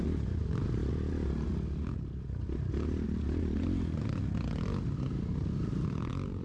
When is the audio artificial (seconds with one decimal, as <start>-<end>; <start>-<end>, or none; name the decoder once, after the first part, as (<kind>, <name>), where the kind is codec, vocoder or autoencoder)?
none